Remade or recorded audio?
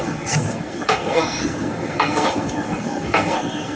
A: remade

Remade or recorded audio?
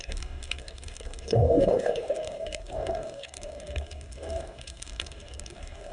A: remade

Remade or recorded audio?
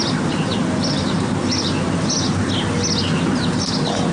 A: recorded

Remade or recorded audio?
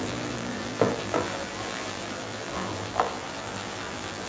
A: remade